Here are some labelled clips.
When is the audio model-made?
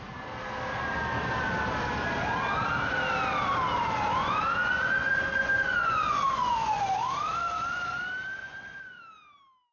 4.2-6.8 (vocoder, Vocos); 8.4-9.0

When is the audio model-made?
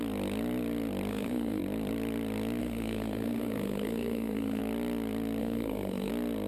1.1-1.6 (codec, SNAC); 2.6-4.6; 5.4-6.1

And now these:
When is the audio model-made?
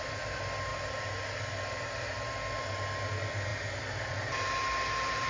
none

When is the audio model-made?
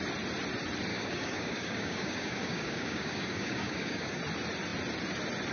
0.9-4.2 (codec, DAC)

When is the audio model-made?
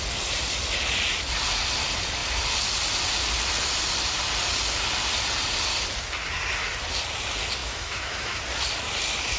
7.6-8.4 (autoencoder, DAC-VAE)